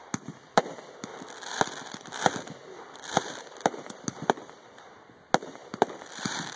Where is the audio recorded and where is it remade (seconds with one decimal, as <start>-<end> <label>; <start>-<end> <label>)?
0.0-1.1 recorded; 1.1-5.1 remade; 5.1-5.6 recorded; 5.6-6.6 remade